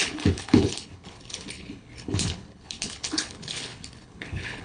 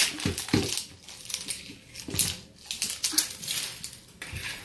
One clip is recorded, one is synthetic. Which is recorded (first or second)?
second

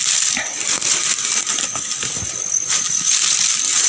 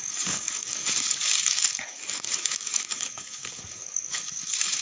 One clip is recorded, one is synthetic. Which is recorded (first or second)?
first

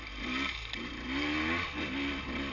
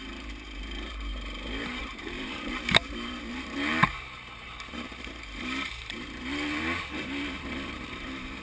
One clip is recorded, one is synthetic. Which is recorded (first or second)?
first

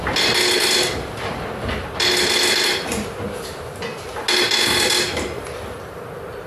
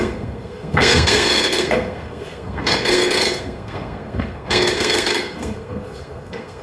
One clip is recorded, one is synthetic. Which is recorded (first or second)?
first